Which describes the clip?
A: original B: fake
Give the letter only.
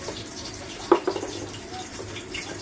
A